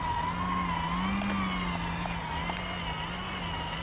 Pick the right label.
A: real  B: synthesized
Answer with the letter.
A